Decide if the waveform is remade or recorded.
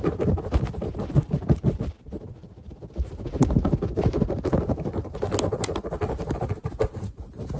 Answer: recorded